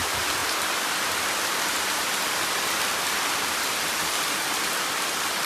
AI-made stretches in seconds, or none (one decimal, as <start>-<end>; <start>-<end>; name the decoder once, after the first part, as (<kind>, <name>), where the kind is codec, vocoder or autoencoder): none